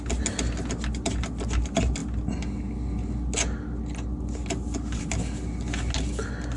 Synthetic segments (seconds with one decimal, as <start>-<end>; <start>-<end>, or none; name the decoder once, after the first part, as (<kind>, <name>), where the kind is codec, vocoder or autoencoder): none